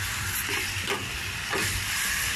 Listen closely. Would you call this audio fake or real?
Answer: real